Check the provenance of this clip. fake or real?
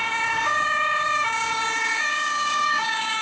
fake